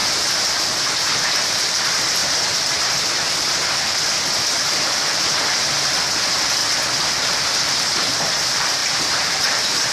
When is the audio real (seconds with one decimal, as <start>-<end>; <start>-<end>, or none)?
0.0-1.0; 2.2-4.7; 6.6-7.1

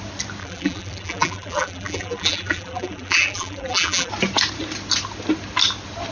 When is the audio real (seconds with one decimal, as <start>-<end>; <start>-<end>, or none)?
0.0-0.4; 4.1-6.1